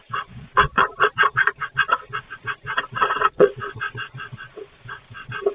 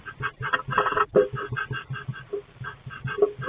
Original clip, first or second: second